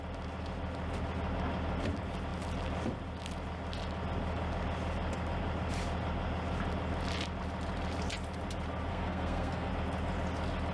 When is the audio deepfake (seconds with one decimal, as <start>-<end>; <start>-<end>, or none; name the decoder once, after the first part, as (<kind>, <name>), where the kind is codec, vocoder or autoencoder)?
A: 8.9-9.7 (codec, SNAC)